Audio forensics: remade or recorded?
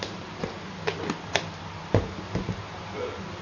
recorded